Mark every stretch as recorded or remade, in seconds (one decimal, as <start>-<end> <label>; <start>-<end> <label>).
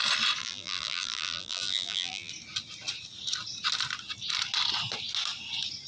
0.0-0.4 recorded; 0.4-2.3 remade; 2.3-5.9 recorded